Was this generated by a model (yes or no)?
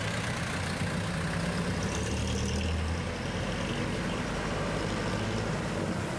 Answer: no